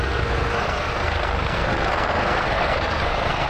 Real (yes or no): no